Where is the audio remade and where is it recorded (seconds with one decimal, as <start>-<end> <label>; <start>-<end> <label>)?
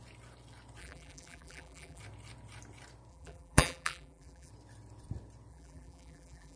0.0-0.8 recorded; 0.8-2.0 remade; 2.0-3.1 recorded; 3.1-4.5 remade; 4.5-5.5 recorded; 5.5-6.6 remade